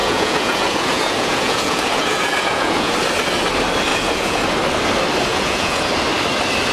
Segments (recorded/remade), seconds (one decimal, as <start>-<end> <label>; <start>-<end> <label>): 0.0-2.9 remade; 2.9-3.9 recorded; 3.9-4.4 remade; 4.4-5.3 recorded; 5.3-5.9 remade; 5.9-6.7 recorded